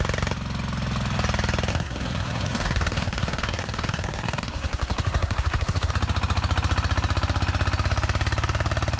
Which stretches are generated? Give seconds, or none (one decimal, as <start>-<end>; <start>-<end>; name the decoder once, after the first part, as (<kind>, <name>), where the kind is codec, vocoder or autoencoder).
1.7-5.9 (codec, SNAC)